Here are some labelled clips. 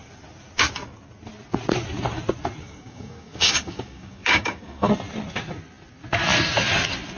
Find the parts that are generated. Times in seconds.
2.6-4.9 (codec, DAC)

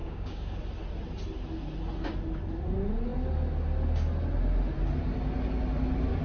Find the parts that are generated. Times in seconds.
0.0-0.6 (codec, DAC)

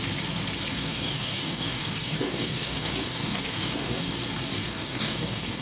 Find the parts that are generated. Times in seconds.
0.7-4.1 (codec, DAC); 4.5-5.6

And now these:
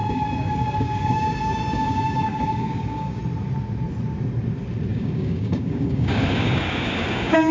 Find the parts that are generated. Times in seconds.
0.0-3.2 (codec, DAC); 4.9-7.5

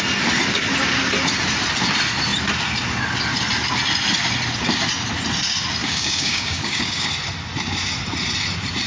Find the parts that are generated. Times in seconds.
5.8-7.1 (codec, DAC)

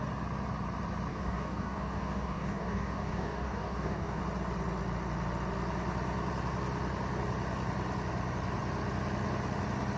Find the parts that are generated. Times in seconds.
1.1-4.2 (codec, DAC)